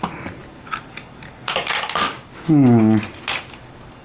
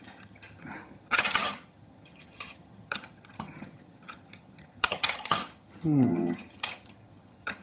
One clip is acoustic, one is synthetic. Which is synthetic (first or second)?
second